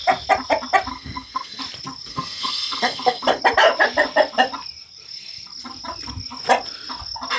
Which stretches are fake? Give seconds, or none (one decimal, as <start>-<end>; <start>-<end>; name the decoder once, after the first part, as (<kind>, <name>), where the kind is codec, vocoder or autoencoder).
0.9-1.6 (codec, SNAC); 2.1-3.4